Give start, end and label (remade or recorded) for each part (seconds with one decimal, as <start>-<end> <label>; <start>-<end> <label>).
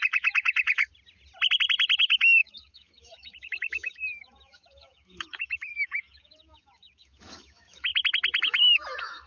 0.0-0.9 remade; 0.9-2.0 recorded; 2.0-7.9 remade; 7.9-8.4 recorded; 8.4-9.3 remade